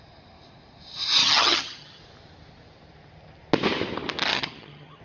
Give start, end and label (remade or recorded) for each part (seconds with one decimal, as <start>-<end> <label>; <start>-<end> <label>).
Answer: 0.0-1.2 recorded; 1.2-2.0 remade; 2.0-4.3 recorded; 4.3-5.0 remade